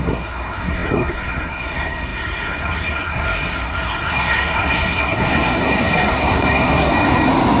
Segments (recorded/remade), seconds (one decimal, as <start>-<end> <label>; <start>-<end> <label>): 0.0-6.9 remade; 6.9-7.6 recorded